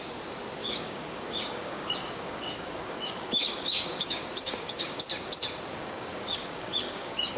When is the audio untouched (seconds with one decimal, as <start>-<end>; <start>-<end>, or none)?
0.0-0.6; 5.0-5.7